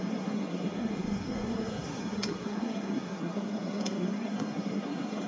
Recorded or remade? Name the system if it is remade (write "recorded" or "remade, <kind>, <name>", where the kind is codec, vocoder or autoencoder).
remade, codec, SNAC